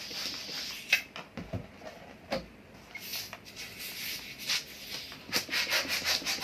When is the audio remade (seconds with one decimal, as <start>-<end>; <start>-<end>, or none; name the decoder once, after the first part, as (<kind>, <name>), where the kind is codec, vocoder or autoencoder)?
none